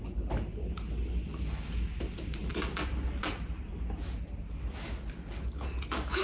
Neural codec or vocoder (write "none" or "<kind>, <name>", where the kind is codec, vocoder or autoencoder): none